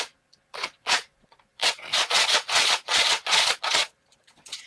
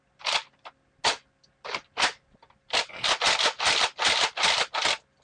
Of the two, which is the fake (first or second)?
first